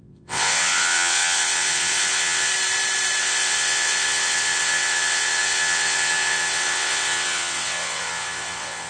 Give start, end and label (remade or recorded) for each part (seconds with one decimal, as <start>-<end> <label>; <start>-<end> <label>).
0.0-2.5 remade; 2.5-3.2 recorded; 3.2-8.9 remade

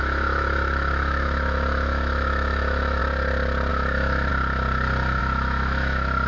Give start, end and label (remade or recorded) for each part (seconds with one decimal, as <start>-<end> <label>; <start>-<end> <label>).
0.0-3.0 remade; 3.0-3.7 recorded; 3.7-4.3 remade; 4.3-5.2 recorded; 5.2-6.3 remade

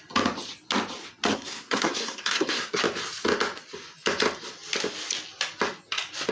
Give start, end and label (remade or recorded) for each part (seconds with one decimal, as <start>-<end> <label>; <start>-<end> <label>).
0.0-1.3 recorded; 1.3-2.8 remade; 2.8-6.3 recorded

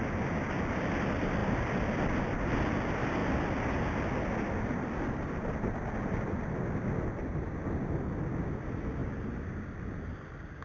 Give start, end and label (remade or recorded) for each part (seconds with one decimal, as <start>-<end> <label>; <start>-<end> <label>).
0.0-10.6 recorded

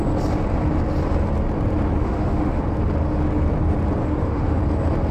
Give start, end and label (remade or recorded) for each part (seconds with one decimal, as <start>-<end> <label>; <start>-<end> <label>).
0.0-2.0 recorded; 2.0-2.6 remade; 2.6-4.0 recorded; 4.0-4.6 remade; 4.6-5.1 recorded